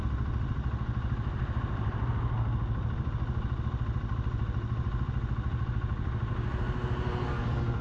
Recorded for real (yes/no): yes